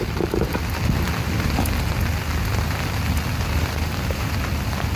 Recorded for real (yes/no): yes